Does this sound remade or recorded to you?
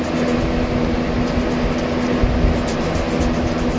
recorded